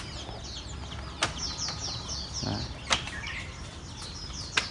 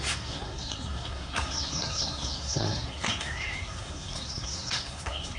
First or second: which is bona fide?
first